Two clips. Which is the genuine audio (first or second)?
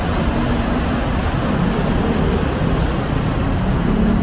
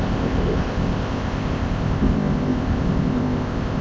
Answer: first